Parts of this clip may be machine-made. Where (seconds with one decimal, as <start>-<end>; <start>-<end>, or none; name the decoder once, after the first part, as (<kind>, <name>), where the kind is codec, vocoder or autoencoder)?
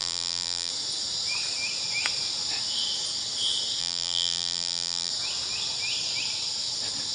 0.0-0.7 (vocoder, BigVGAN v2); 3.8-5.1